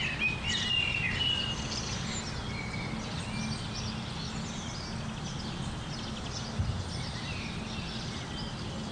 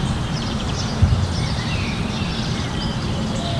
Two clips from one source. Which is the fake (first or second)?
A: second